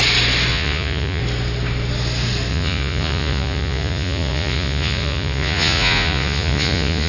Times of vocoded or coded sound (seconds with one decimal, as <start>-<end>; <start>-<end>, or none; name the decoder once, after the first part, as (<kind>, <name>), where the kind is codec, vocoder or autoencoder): 0.5-1.2 (vocoder, Vocos); 2.5-7.1